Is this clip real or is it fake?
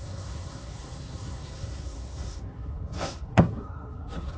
fake